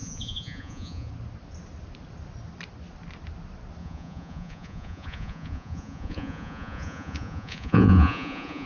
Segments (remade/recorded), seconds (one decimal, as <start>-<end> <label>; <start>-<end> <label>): 0.0-1.1 remade; 1.1-3.8 recorded; 3.8-8.7 remade